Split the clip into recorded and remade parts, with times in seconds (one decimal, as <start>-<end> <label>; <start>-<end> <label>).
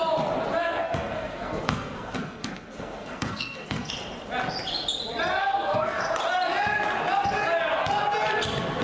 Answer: 0.0-0.6 recorded; 0.6-3.9 remade; 3.9-5.4 recorded; 5.4-6.0 remade; 6.0-8.8 recorded